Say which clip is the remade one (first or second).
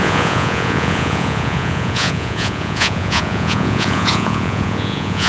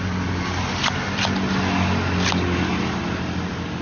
first